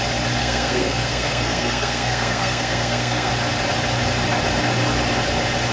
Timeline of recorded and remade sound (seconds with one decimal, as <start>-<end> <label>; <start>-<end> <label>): 0.0-0.4 recorded; 0.4-3.3 remade; 3.3-5.7 recorded